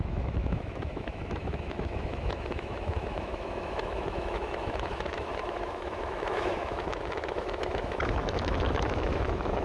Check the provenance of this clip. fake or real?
fake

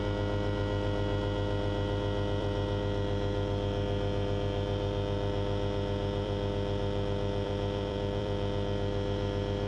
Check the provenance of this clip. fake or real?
fake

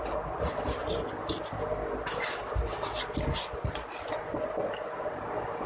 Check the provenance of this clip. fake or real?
real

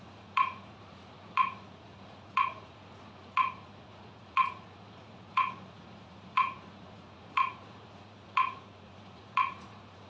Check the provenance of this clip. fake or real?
fake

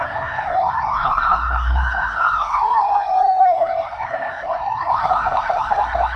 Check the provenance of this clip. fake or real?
fake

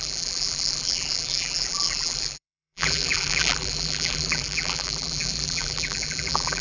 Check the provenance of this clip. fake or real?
fake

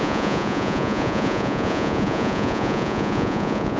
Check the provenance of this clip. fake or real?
fake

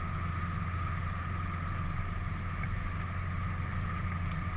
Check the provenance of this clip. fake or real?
real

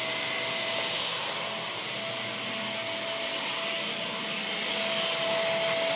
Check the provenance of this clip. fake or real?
real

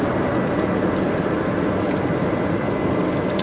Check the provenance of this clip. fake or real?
real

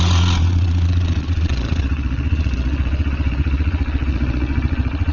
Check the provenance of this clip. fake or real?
fake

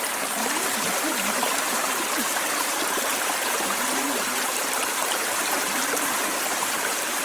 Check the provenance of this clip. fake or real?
fake